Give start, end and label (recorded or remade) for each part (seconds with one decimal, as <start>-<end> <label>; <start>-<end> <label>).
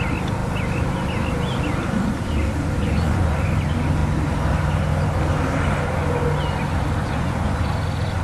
0.0-2.8 recorded; 2.8-3.4 remade; 3.4-7.0 recorded; 7.0-7.7 remade; 7.7-8.2 recorded